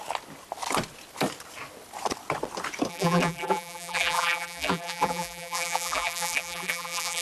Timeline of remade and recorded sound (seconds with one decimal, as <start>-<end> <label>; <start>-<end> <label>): 0.0-2.9 recorded; 2.9-7.2 remade